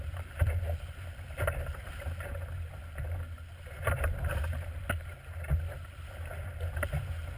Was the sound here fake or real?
real